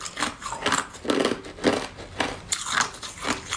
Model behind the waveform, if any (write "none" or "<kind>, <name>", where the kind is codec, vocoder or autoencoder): none